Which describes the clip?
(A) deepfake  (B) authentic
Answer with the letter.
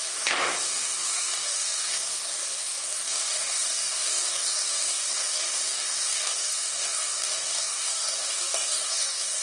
A